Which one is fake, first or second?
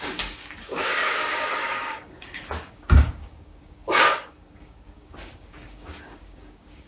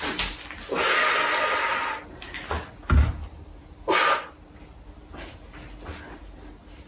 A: first